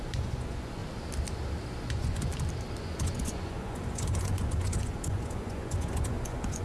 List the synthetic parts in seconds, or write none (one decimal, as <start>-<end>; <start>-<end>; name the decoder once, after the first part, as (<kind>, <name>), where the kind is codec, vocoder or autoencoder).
0.0-0.8 (vocoder, Vocos); 1.9-2.3; 2.8-6.6